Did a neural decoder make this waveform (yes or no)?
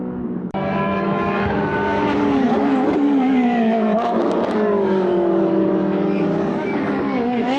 yes